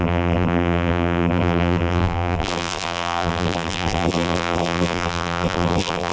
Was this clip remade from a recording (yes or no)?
yes